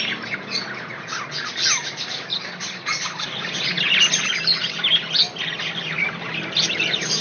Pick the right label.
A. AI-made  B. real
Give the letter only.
B